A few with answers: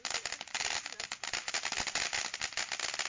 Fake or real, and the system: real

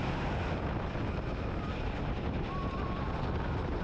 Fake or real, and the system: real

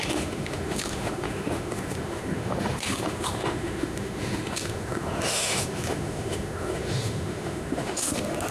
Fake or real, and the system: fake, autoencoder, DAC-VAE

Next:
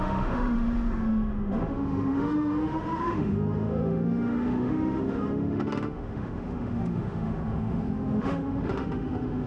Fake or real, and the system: fake, autoencoder, DAC-VAE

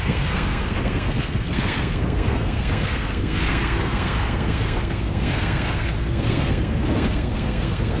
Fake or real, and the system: fake, codec, SNAC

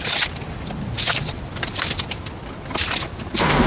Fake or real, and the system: real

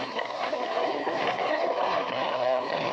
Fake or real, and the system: fake, codec, SNAC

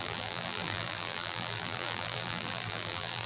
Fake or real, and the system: fake, vocoder, BigVGAN v2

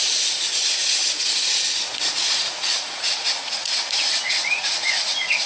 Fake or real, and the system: fake, vocoder, Vocos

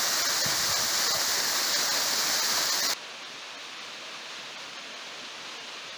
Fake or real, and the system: real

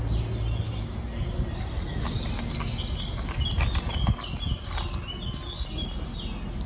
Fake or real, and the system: real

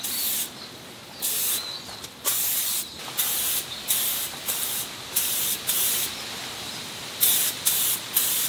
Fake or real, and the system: real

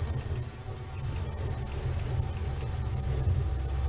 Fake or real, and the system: real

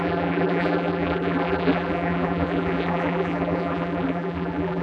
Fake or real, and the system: fake, vocoder, BigVGAN v2